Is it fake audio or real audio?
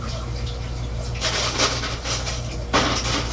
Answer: real